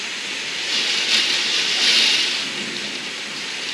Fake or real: real